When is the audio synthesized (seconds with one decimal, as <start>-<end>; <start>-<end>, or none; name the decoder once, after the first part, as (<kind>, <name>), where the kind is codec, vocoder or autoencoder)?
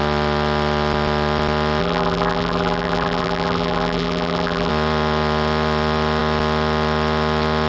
1.8-4.7 (vocoder, BigVGAN v2)